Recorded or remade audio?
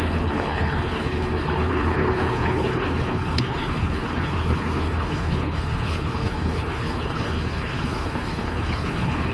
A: remade